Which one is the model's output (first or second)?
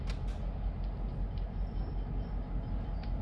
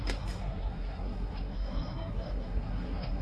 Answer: second